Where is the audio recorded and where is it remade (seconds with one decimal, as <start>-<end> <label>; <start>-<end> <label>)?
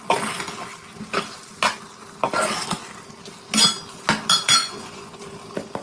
0.0-4.6 recorded; 4.6-5.2 remade; 5.2-5.8 recorded